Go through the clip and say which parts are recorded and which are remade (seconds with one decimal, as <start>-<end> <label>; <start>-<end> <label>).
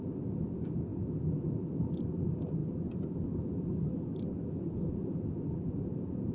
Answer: 0.0-6.3 recorded